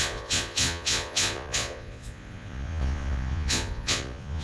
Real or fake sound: fake